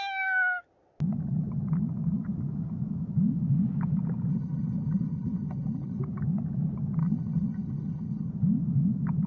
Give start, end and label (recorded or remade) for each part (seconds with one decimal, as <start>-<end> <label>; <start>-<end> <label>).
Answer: 0.0-4.3 recorded; 4.3-6.0 remade; 6.0-7.0 recorded; 7.0-8.3 remade; 8.3-9.3 recorded